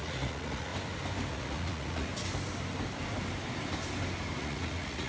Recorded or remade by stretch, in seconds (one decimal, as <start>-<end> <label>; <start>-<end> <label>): 0.0-0.7 remade; 0.7-1.3 recorded; 1.3-2.1 remade; 2.1-4.4 recorded; 4.4-5.1 remade